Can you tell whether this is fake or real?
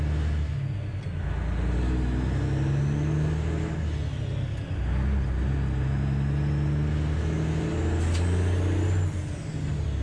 real